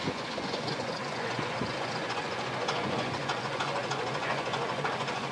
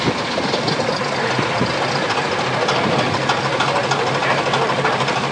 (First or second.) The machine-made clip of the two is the first